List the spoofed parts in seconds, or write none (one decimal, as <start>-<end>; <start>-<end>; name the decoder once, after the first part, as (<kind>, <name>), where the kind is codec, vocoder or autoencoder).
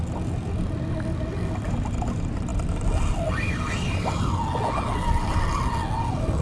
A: none